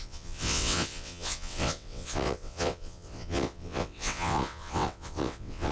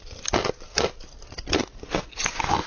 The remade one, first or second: first